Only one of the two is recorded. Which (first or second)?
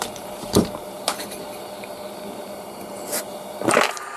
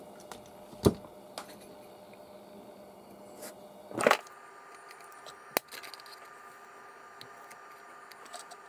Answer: second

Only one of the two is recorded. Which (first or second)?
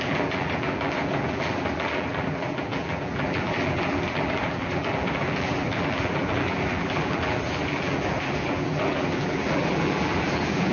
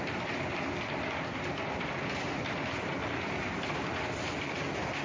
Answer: second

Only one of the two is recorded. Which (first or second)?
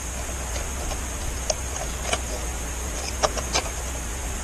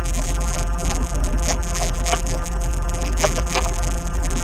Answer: first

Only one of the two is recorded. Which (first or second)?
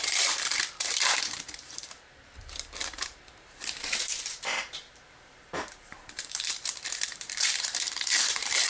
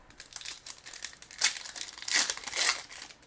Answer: second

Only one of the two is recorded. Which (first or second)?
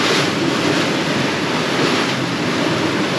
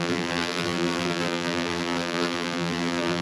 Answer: first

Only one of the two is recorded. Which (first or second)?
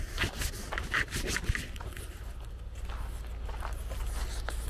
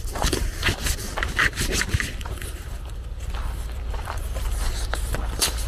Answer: first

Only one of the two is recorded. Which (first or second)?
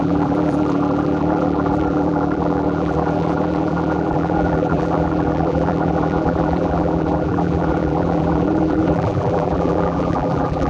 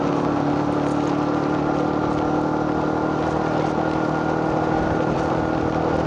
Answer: second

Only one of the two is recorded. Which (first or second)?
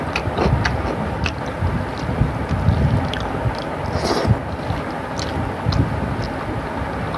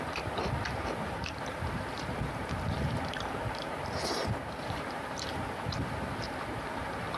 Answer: first